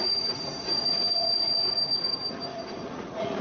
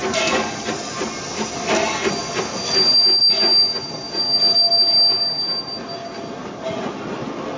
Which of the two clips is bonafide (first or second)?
second